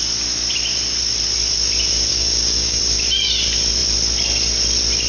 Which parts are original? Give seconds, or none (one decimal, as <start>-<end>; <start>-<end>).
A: 0.0-2.1; 2.8-5.1